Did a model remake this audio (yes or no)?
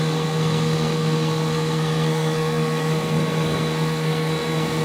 yes